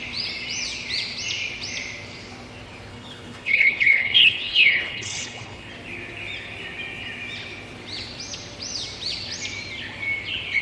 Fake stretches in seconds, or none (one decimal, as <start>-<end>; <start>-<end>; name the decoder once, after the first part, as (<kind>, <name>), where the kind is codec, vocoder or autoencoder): 2.9-5.7 (codec, HILCodec)